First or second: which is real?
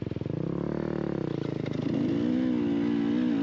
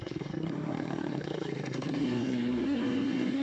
first